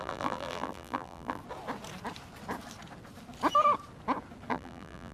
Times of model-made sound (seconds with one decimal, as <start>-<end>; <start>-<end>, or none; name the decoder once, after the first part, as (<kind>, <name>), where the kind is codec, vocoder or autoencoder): 0.0-1.4 (vocoder, BigVGAN v2); 4.5-5.1